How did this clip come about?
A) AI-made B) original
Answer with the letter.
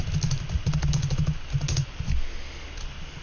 B